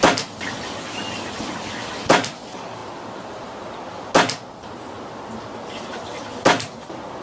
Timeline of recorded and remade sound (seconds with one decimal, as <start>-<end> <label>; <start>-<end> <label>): 0.0-7.2 recorded